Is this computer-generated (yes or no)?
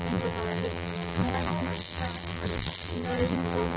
yes